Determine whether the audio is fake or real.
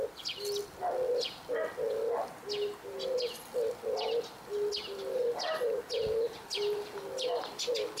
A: real